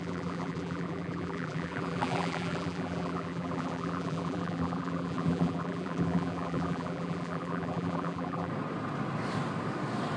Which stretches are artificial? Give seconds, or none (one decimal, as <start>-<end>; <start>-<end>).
0.0-8.5